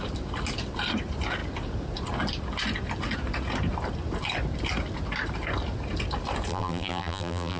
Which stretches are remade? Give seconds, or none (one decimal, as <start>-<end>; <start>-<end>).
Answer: 6.5-7.6